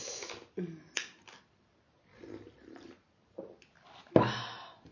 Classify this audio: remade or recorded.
recorded